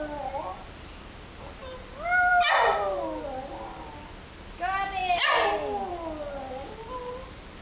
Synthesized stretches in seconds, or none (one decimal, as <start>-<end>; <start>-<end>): none